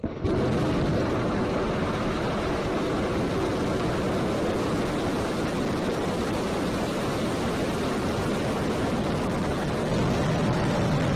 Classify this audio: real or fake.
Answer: real